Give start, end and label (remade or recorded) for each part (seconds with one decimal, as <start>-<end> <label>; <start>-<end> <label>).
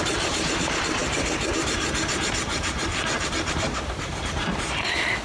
0.0-2.9 remade; 2.9-3.5 recorded; 3.5-5.2 remade